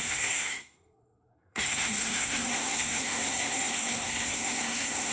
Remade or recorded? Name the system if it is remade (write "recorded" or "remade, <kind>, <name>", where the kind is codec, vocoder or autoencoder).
remade, codec, SNAC